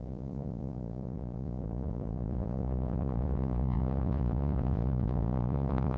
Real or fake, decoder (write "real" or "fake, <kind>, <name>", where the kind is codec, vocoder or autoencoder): fake, vocoder, Vocos